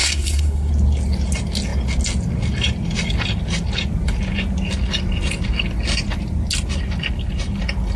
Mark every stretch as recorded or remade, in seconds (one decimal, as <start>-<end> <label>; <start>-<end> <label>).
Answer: 0.0-0.7 remade; 0.7-8.0 recorded